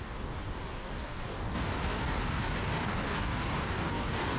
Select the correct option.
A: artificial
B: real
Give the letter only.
A